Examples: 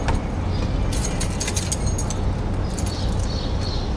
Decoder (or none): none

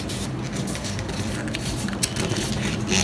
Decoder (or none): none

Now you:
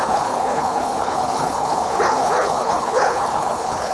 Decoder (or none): codec, HILCodec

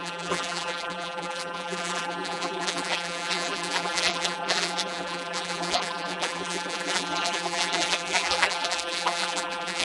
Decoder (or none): vocoder, BigVGAN v2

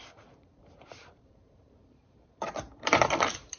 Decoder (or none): vocoder, BigVGAN v2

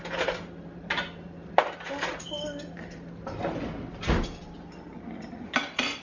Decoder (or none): none